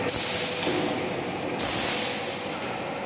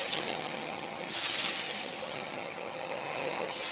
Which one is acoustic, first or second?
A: first